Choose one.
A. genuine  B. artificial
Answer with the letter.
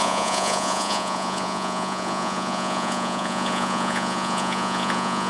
B